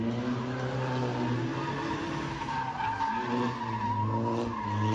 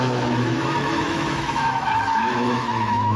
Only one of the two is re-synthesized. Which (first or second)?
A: second